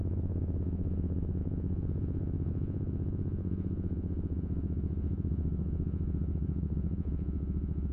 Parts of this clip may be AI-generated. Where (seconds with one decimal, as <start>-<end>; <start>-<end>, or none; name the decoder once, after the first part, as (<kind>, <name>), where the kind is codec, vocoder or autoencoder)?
0.0-7.9 (vocoder, Vocos)